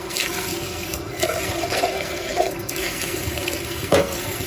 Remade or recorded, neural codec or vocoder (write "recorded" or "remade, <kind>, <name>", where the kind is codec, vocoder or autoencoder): remade, codec, SNAC